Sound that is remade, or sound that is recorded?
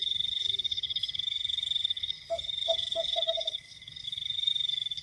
remade